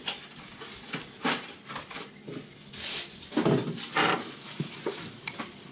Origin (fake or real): real